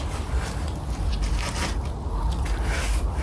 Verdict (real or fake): real